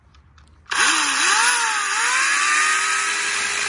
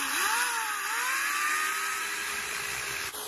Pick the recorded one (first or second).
first